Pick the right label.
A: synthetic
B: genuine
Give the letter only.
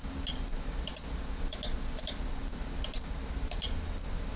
B